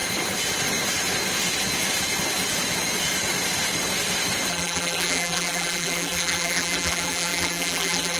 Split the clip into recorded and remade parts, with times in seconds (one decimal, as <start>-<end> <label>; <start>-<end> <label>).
0.0-4.5 recorded; 4.5-8.2 remade